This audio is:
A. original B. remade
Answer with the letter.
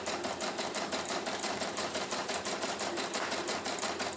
B